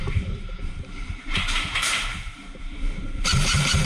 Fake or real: fake